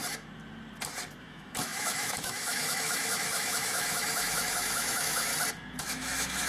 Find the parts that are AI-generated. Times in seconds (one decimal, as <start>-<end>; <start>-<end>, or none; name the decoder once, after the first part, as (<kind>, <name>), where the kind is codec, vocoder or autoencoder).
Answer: 1.2-5.3 (autoencoder, DAC-VAE); 5.8-6.5